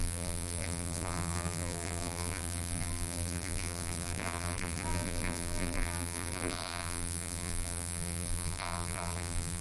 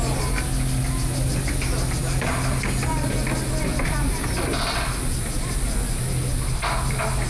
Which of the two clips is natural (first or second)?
second